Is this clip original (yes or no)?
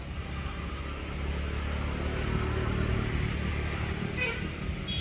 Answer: yes